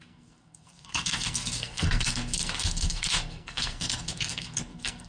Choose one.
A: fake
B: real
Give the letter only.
A